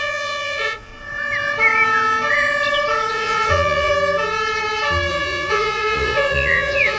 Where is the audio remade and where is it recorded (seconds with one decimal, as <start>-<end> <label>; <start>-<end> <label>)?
0.0-0.9 remade; 0.9-3.1 recorded; 3.1-3.9 remade; 3.9-5.1 recorded; 5.1-7.0 remade